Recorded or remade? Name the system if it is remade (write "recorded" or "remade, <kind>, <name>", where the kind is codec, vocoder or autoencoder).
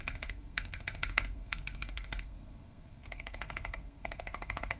remade, codec, SNAC